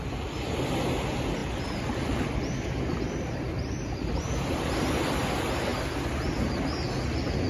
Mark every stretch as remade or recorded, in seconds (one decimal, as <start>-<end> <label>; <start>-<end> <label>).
0.0-1.4 recorded; 1.4-4.9 remade; 4.9-5.7 recorded; 5.7-7.5 remade

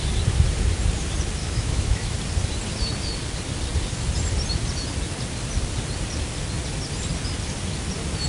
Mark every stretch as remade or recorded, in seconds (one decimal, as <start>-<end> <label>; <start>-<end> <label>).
0.0-1.4 recorded; 1.4-2.2 remade; 2.2-8.3 recorded

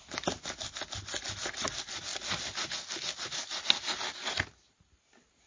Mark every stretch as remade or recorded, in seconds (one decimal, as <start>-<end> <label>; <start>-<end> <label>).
0.0-5.5 recorded

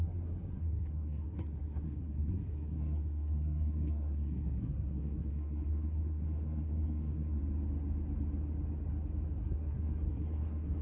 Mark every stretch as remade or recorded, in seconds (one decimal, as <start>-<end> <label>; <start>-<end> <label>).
0.0-7.4 remade; 7.4-9.4 recorded; 9.4-10.8 remade

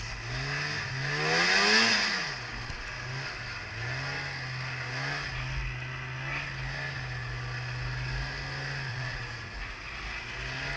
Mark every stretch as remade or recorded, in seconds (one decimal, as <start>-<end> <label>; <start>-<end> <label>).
0.0-8.9 recorded; 8.9-9.7 remade; 9.7-10.8 recorded

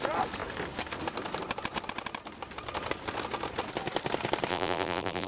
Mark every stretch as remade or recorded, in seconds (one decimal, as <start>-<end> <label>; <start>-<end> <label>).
0.0-4.5 recorded; 4.5-5.3 remade